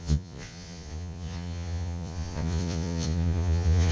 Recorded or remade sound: remade